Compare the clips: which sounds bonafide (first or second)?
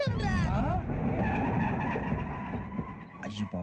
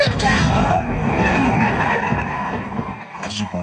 first